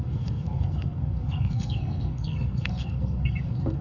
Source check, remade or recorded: remade